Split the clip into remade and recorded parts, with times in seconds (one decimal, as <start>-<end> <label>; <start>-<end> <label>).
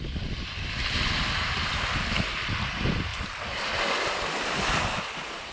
0.0-5.5 recorded